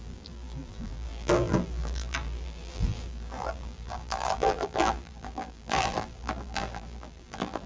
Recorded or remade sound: remade